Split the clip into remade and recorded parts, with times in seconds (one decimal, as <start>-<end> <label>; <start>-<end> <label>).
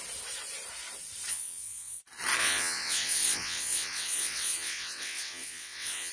0.0-1.3 recorded; 1.3-2.0 remade; 2.0-2.4 recorded; 2.4-6.1 remade